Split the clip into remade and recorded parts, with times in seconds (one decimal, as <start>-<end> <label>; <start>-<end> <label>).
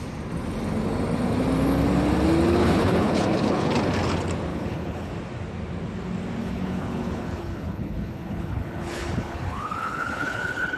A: 0.0-2.6 recorded; 2.6-3.7 remade; 3.7-4.5 recorded; 4.5-5.1 remade; 5.1-6.4 recorded; 6.4-10.8 remade